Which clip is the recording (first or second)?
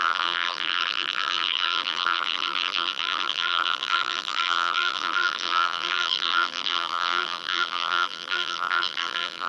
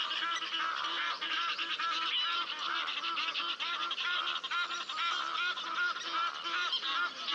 second